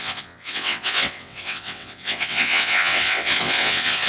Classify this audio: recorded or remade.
remade